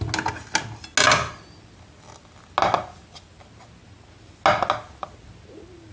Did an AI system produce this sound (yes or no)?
no